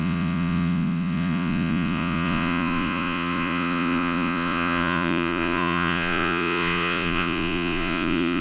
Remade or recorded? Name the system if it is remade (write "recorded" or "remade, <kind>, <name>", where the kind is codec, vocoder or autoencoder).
remade, vocoder, Vocos